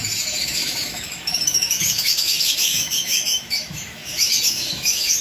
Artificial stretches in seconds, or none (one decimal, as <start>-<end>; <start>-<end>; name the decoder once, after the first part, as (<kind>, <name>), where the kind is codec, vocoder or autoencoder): 0.0-5.2 (autoencoder, DAC-VAE)